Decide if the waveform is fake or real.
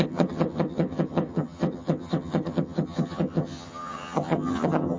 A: fake